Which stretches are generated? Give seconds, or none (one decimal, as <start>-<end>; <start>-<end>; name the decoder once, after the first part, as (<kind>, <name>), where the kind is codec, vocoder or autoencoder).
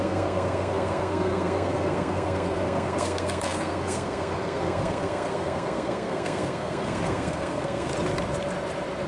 0.0-7.9 (codec, SNAC)